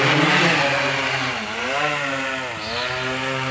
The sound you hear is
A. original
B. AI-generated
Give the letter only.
A